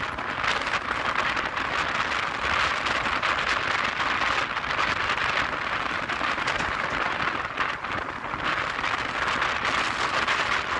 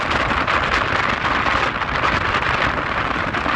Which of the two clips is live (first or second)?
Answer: first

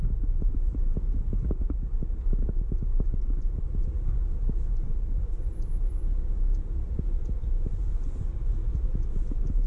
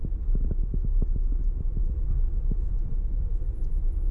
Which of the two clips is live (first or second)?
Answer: second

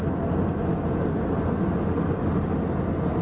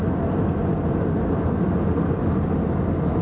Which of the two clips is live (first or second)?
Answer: first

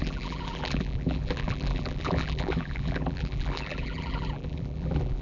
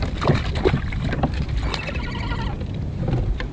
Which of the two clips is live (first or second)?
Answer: second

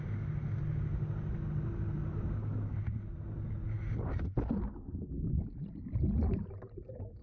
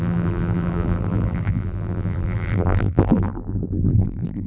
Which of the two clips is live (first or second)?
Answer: first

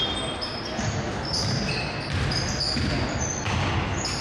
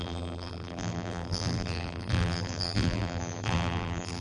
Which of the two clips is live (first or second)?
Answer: first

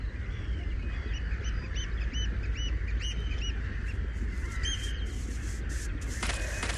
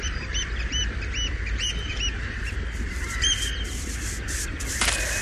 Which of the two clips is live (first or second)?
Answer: first